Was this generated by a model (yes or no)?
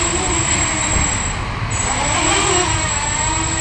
no